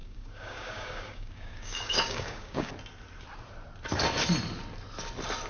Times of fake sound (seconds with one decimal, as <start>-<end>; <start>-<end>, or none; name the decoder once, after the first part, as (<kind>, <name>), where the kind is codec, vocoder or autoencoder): 0.0-2.7 (codec, DAC)